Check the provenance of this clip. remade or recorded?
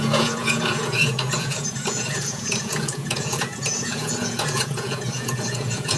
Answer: remade